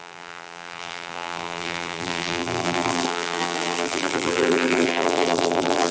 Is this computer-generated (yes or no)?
yes